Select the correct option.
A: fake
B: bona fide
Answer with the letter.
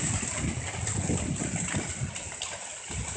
B